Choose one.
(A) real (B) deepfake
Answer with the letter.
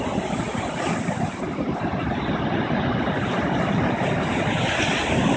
A